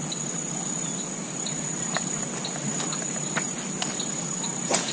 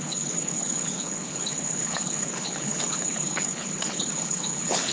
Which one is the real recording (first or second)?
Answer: first